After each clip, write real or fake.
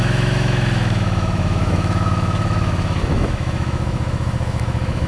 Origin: fake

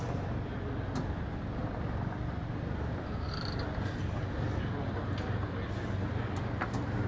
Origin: real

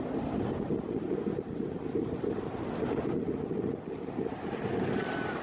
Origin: real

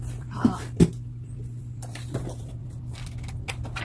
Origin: real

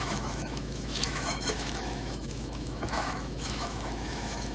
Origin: fake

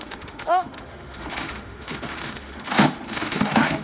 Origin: fake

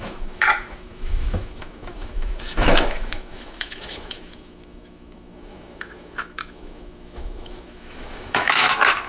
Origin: fake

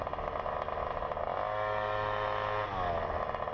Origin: real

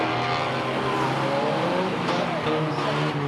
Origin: real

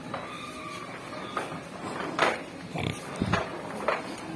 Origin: real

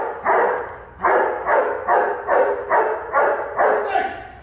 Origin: real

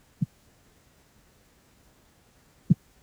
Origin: fake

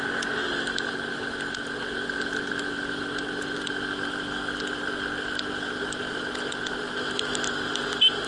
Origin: real